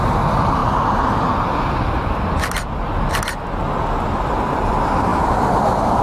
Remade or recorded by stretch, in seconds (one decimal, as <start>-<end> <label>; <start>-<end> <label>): 0.0-6.0 recorded